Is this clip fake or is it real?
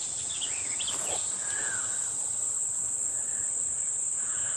real